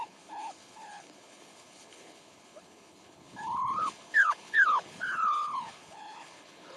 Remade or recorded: remade